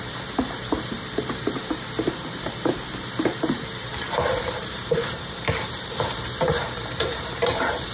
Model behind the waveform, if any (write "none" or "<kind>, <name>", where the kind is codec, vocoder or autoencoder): vocoder, BigVGAN v2